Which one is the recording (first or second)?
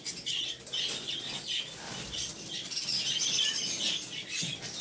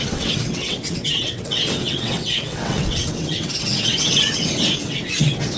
first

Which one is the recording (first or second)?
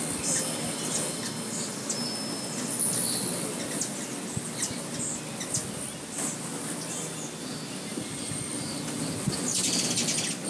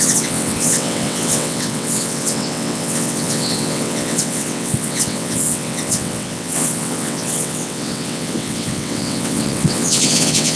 first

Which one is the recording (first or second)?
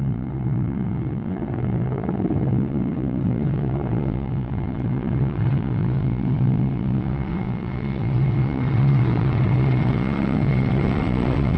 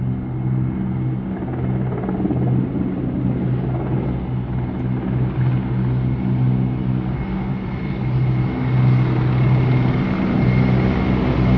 second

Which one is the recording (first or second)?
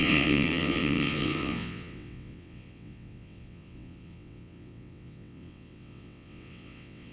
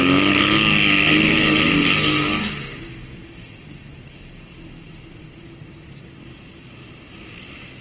second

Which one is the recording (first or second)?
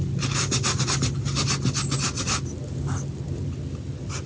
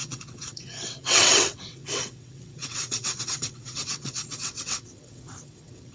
first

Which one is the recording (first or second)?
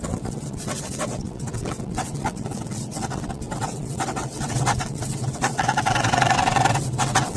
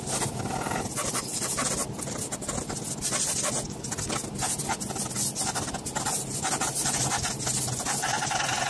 second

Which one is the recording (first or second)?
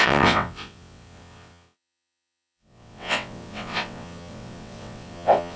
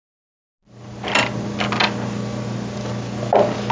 second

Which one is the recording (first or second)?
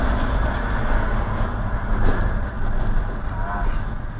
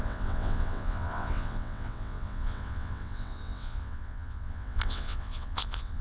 first